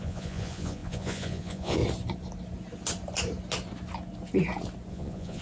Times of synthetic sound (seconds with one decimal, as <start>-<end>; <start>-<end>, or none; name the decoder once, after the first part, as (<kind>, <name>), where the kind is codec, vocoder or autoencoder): 0.0-1.8 (vocoder, Vocos); 4.9-5.4